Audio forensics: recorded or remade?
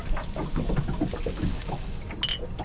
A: recorded